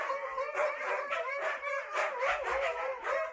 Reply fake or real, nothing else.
fake